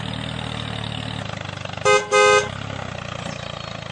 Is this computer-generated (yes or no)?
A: no